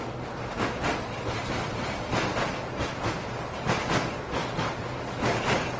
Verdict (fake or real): real